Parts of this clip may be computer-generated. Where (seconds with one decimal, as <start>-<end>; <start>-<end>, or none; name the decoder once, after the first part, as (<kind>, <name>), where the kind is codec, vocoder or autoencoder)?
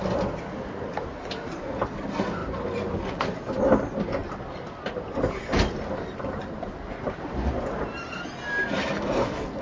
none